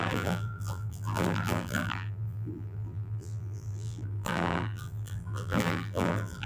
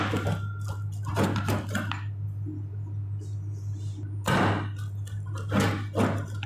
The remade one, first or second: first